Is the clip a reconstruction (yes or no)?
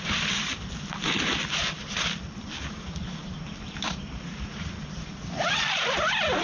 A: no